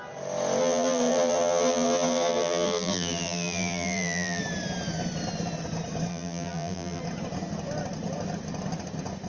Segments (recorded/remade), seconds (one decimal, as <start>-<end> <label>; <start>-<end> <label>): 0.0-0.6 recorded; 0.6-4.4 remade; 4.4-6.1 recorded; 6.1-7.0 remade; 7.0-9.3 recorded

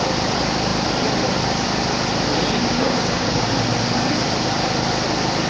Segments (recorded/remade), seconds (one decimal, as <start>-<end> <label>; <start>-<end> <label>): 0.0-2.6 recorded; 2.6-3.5 remade; 3.5-5.5 recorded

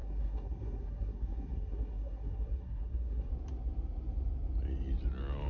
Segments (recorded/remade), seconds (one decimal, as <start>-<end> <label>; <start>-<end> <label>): 0.0-3.3 remade; 3.3-5.5 recorded

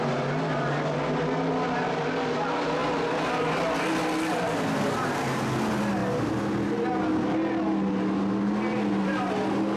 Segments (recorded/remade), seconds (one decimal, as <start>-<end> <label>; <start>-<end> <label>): 0.0-9.8 recorded